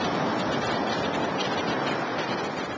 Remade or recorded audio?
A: recorded